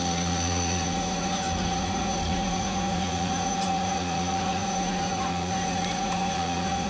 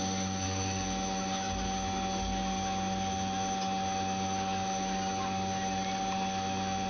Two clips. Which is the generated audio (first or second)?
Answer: first